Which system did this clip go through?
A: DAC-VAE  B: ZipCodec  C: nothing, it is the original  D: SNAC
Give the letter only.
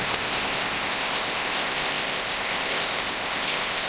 B